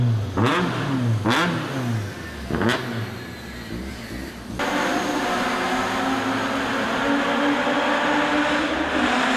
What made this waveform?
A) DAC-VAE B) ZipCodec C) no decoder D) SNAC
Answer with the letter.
C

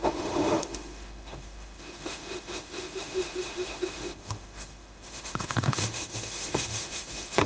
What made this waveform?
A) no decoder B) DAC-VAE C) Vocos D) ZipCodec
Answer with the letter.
B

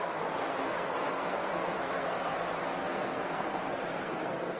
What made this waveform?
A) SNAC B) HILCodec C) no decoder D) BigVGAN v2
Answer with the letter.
A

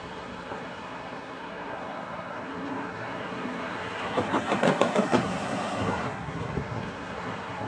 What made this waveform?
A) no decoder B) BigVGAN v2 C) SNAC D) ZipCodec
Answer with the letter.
C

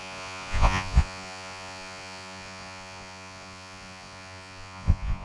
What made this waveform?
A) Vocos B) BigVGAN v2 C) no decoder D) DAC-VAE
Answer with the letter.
A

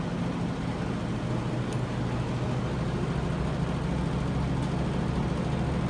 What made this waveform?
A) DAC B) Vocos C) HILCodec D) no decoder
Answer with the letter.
D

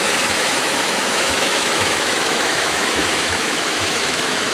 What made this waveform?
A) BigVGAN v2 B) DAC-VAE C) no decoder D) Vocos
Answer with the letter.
B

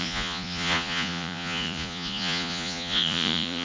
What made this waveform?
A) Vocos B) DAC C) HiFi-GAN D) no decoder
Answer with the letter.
A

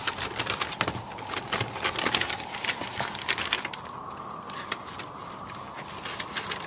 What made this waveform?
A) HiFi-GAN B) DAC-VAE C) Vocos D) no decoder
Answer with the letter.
D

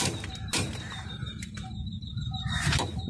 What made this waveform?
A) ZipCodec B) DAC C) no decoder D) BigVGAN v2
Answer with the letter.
D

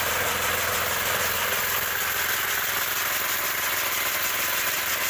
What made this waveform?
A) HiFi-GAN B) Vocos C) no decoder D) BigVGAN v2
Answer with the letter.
C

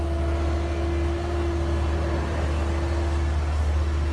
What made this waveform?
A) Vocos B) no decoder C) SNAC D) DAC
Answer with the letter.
B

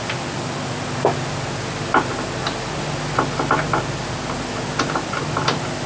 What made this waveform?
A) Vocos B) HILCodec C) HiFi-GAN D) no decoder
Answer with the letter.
D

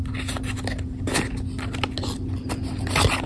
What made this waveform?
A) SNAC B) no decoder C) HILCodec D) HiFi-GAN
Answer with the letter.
B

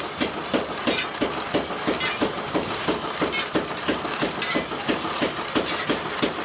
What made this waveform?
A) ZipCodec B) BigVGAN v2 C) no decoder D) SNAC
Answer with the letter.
C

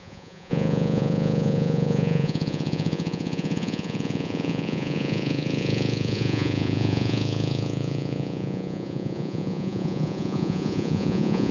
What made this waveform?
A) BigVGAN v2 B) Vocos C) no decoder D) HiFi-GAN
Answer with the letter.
B